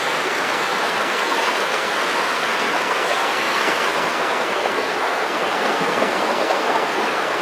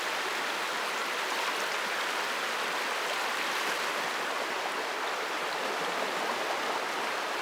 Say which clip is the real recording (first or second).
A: second